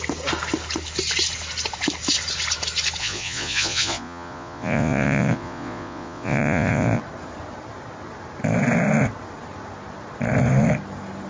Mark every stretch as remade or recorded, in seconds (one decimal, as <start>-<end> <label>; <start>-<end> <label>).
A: 0.0-3.0 recorded; 3.0-7.0 remade; 7.0-11.3 recorded